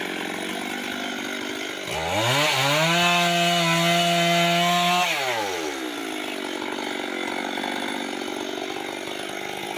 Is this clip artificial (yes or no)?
no